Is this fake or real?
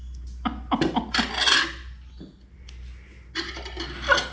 real